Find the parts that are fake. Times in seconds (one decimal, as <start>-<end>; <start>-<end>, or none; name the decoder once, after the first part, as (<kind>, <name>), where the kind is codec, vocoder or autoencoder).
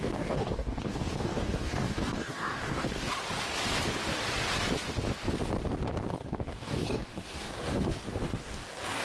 0.0-3.1 (codec, DAC); 6.1-7.9; 8.4-9.0